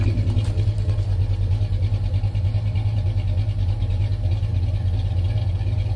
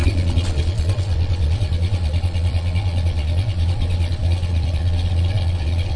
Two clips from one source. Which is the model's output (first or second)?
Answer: second